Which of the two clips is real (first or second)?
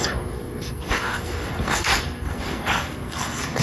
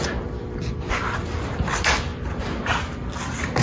second